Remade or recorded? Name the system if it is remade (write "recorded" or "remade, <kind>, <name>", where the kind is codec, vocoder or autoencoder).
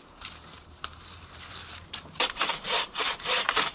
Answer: remade, vocoder, BigVGAN v2